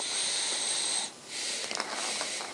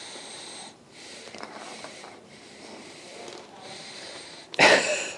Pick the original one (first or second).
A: first